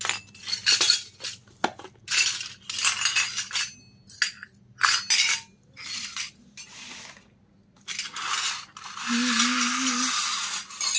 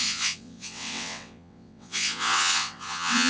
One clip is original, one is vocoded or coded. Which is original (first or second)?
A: first